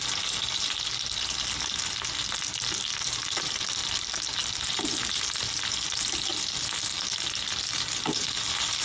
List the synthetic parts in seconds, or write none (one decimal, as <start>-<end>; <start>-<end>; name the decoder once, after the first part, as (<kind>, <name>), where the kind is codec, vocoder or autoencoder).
none

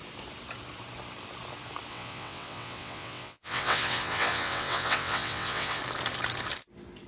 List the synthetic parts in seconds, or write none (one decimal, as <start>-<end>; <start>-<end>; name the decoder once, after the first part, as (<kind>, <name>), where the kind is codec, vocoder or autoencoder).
1.9-5.8 (vocoder, WaveNeXt)

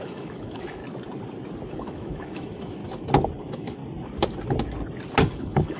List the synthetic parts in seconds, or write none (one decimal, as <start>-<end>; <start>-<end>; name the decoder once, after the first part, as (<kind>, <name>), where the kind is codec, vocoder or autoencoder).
0.0-0.8 (autoencoder, DAC-VAE); 1.7-2.8; 3.4-3.8; 5.3-5.8

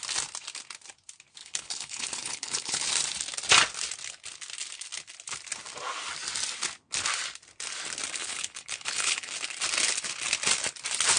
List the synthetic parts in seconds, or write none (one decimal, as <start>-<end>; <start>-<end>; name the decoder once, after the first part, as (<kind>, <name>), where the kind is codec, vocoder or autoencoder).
1.4-2.8 (codec, HILCodec); 8.2-9.3

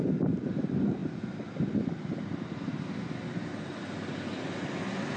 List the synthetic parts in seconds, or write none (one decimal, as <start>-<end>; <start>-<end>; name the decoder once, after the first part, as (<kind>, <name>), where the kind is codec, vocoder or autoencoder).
none

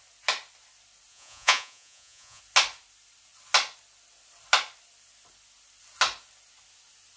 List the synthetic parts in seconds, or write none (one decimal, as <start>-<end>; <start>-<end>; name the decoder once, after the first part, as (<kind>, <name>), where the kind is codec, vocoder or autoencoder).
1.1-2.4 (vocoder, Vocos)